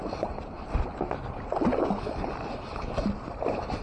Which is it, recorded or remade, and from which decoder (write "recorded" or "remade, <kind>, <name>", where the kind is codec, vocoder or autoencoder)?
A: recorded